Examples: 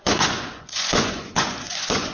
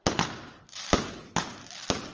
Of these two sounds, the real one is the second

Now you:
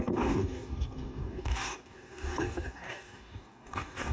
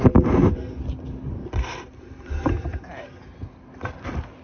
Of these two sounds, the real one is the second